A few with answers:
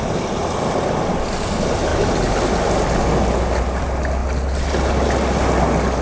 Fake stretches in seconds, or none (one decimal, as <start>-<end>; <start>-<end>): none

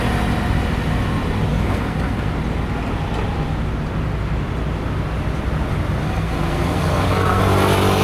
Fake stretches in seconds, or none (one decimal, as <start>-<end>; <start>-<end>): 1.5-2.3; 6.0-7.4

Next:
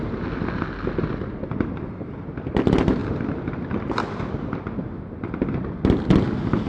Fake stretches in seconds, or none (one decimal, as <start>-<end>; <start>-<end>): none

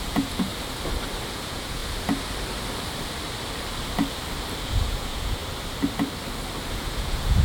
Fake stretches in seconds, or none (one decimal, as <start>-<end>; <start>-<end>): 0.0-0.5; 1.3-1.8; 4.6-5.4; 6.7-7.4